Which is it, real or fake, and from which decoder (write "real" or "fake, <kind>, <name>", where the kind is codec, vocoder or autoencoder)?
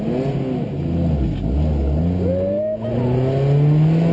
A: real